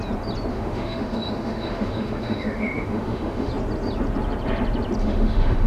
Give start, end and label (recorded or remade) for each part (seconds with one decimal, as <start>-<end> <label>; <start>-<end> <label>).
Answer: 0.0-0.5 recorded; 0.5-3.5 remade; 3.5-5.0 recorded; 5.0-5.7 remade